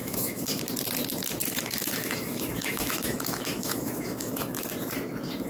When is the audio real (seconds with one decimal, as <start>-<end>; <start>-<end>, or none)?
0.6-1.4; 4.7-5.5